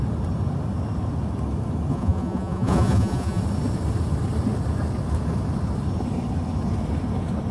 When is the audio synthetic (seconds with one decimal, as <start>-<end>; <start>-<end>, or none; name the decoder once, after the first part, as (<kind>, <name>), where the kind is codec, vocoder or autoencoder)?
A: 1.9-3.4 (vocoder, Vocos)